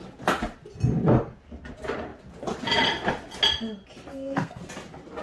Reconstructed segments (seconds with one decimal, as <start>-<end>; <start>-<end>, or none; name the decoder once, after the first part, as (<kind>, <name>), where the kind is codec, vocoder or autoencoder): 4.1-4.6 (codec, SNAC)